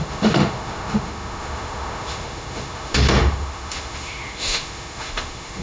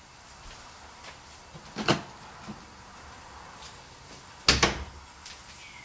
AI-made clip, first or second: first